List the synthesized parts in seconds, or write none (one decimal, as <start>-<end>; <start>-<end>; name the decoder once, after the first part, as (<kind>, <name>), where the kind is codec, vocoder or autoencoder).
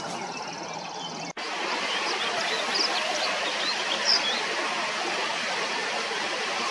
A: 5.8-6.7 (vocoder, BigVGAN v2)